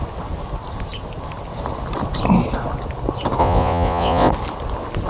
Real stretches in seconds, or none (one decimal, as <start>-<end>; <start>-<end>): 0.0-3.4; 4.3-5.1

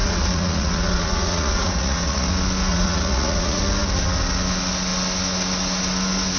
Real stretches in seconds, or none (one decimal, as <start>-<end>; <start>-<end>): 2.3-2.7; 3.6-6.4

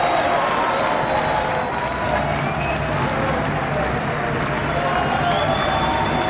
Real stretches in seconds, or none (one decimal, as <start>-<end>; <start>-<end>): 0.0-6.3

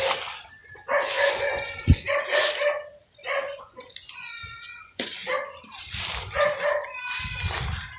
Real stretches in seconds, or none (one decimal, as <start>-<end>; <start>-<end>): 0.0-0.6; 2.5-3.2; 5.3-8.0

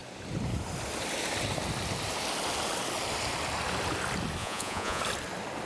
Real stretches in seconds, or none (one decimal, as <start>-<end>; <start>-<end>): 0.0-4.4; 5.0-5.7

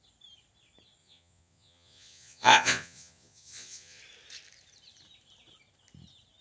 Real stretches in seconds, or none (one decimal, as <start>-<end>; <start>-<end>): 0.0-1.0; 4.0-6.4